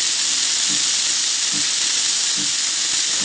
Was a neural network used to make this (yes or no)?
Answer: no